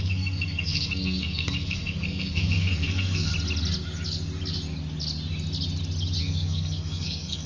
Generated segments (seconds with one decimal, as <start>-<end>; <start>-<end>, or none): 0.0-3.3; 6.2-7.5